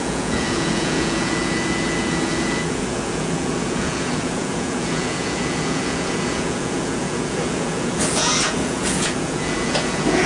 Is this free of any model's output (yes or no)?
no